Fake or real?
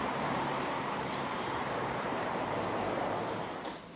fake